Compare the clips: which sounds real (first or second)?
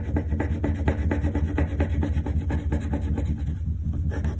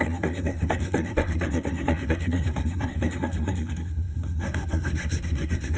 first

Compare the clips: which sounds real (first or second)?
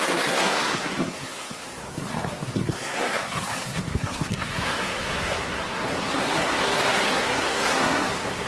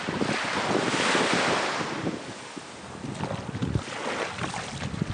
second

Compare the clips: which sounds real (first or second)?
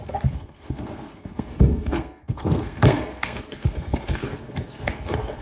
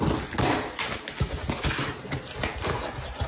second